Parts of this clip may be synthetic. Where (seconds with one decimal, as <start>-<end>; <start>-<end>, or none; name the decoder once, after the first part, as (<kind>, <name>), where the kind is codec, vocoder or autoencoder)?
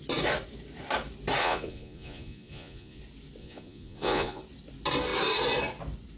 1.4-3.0 (vocoder, Vocos); 3.4-4.4